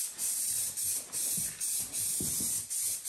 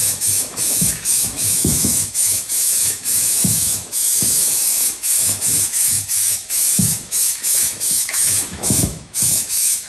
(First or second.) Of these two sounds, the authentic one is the first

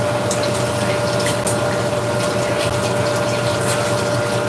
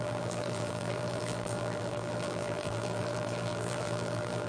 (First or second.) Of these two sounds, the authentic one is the first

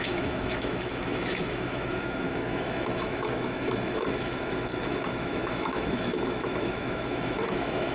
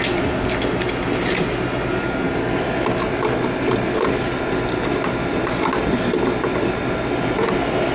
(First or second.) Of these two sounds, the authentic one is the second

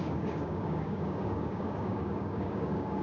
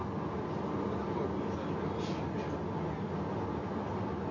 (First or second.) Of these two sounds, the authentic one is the second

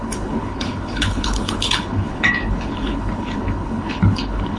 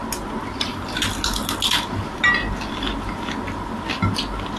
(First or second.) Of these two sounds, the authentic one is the second